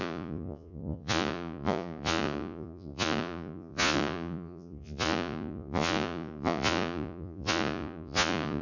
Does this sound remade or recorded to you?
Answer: remade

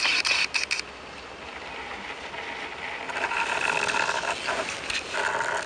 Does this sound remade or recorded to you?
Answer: recorded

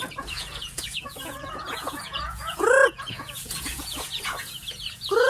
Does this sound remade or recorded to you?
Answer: remade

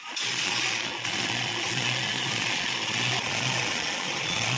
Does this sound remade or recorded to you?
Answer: remade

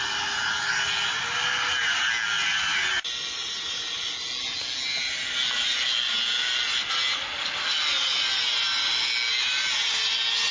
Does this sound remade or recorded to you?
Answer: recorded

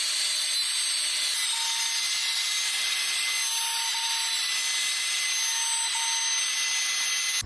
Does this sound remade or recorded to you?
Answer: recorded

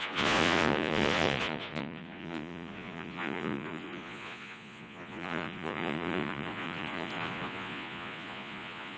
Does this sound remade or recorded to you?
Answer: remade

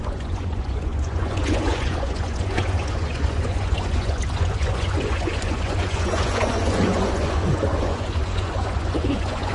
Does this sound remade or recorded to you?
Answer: remade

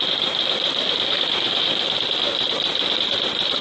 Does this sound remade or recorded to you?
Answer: recorded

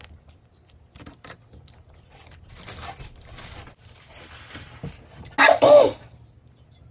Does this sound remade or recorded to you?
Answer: recorded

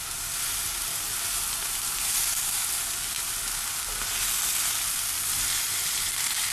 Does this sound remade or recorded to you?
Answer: recorded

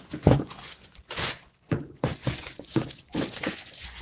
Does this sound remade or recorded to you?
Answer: remade